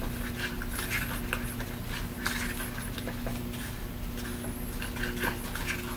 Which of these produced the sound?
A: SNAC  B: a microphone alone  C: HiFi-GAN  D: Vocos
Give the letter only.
B